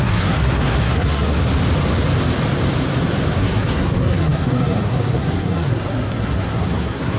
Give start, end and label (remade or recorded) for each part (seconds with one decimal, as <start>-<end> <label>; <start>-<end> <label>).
0.0-1.5 remade; 1.5-3.3 recorded; 3.3-7.2 remade